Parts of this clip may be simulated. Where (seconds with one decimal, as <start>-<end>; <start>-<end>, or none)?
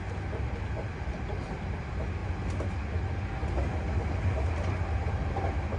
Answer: none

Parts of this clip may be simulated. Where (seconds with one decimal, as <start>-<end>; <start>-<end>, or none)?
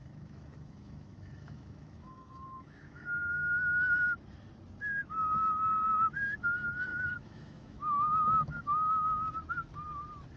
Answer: 0.0-3.8; 6.9-9.3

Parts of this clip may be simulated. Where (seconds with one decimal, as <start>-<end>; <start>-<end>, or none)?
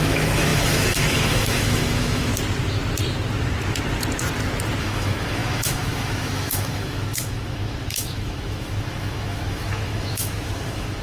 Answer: 0.0-2.3; 4.8-11.0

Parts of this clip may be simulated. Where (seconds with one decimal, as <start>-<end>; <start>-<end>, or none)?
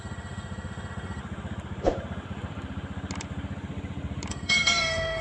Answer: 0.0-1.2; 4.3-5.2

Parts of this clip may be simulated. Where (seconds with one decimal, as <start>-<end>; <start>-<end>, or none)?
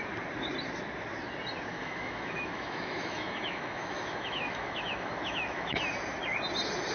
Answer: 1.7-5.8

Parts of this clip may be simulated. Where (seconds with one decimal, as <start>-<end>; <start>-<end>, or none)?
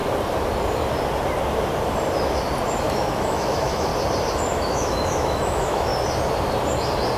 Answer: 2.8-3.9; 4.5-5.9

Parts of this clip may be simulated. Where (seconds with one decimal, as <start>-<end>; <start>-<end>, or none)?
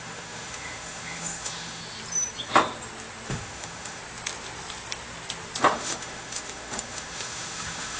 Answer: 0.0-1.8; 3.3-4.0; 5.6-8.0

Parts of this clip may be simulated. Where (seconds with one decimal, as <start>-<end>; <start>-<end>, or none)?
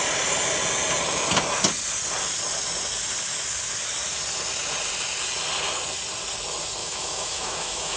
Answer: 6.8-8.0